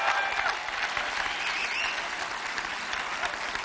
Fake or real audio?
real